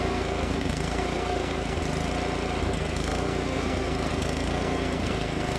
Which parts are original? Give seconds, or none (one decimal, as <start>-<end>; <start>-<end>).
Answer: 1.8-2.6